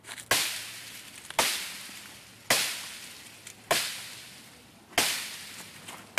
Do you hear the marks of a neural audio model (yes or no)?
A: no